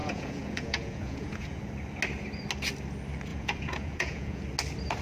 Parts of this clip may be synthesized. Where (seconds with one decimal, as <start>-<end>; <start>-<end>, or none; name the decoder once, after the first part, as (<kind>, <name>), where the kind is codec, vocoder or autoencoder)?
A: 0.0-1.6 (vocoder, Vocos); 3.3-4.4